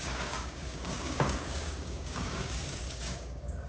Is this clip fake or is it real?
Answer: fake